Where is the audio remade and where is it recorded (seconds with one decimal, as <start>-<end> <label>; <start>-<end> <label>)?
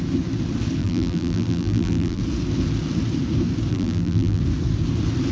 0.0-0.8 recorded; 0.8-2.2 remade; 2.2-3.7 recorded; 3.7-4.4 remade; 4.4-5.3 recorded